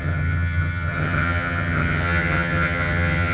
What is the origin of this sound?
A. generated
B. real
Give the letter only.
A